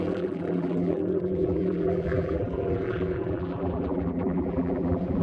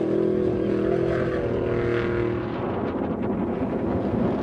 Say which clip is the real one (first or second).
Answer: second